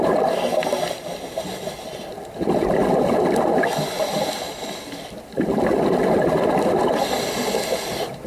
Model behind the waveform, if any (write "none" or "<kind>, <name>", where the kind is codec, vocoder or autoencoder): none